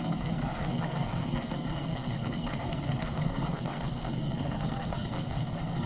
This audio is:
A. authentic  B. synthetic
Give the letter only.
B